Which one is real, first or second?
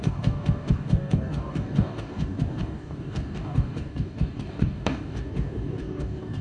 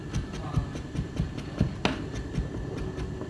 second